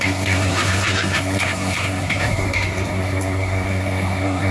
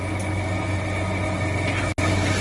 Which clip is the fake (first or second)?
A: first